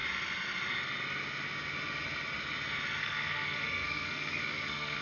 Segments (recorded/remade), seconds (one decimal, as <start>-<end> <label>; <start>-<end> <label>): 0.0-3.0 recorded; 3.0-5.0 remade